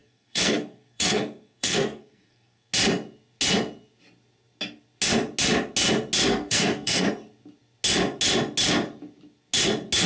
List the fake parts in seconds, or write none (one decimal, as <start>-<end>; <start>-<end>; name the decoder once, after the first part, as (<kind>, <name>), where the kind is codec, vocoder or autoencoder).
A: 0.0-2.7 (codec, SNAC); 6.3-7.1